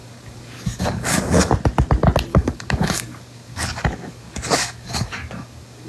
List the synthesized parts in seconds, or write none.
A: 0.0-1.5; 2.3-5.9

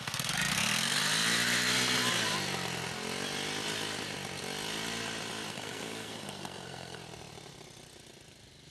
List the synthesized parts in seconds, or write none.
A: 0.0-1.0; 5.5-7.0

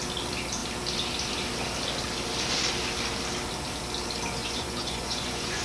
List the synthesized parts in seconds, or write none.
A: 4.4-5.6

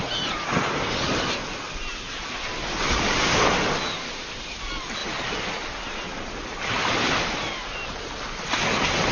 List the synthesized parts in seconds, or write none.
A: none

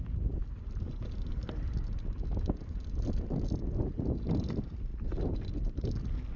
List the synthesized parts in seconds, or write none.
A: none

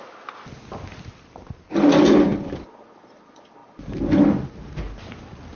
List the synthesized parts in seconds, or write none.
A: none